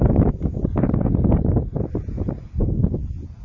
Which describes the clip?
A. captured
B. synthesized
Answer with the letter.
A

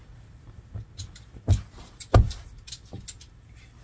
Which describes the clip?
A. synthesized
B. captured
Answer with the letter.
B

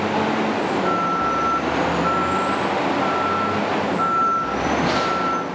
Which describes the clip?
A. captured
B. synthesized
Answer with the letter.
A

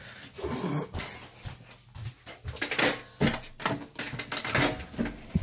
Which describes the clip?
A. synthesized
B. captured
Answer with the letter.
B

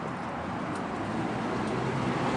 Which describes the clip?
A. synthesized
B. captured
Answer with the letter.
B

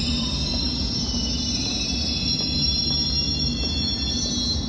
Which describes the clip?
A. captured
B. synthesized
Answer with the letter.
A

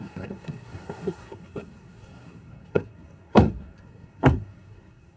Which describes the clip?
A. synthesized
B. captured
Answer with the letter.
A